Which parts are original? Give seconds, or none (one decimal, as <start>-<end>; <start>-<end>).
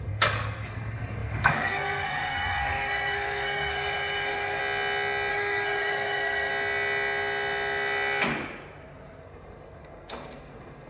4.6-5.3; 6.5-9.2